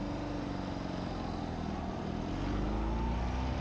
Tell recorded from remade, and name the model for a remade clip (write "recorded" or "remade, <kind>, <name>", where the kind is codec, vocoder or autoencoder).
recorded